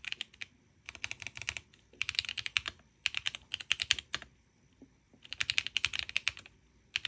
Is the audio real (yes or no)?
yes